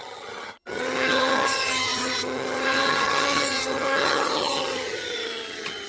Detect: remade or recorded remade